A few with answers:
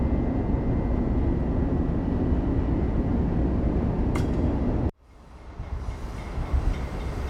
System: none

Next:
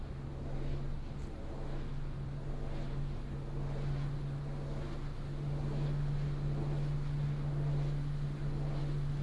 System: none